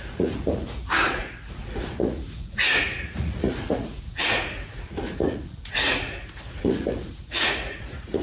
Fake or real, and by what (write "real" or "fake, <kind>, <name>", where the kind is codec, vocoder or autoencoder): fake, vocoder, Vocos